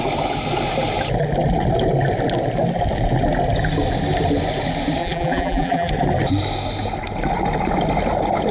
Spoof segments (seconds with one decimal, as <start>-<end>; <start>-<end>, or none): 5.0-5.9